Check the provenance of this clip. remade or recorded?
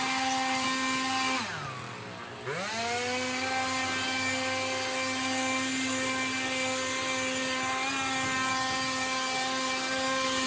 recorded